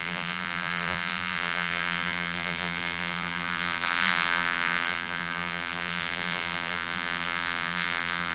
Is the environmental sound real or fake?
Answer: fake